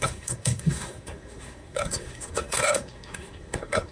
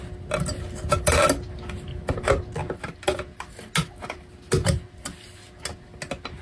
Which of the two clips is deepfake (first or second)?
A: first